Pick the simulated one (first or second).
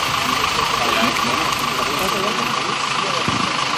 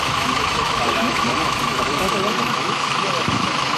second